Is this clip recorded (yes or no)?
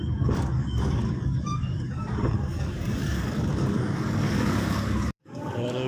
no